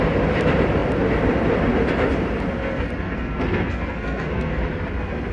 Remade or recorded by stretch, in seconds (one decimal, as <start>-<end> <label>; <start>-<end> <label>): 0.0-2.6 recorded; 2.6-4.6 remade; 4.6-5.3 recorded